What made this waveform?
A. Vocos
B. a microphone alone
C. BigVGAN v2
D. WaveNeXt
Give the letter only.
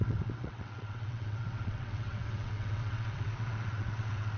D